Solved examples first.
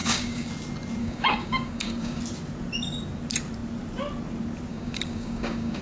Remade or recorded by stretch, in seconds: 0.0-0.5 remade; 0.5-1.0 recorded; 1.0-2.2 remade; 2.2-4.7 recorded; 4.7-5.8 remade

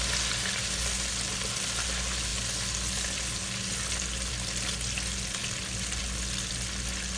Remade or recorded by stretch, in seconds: 0.0-7.2 recorded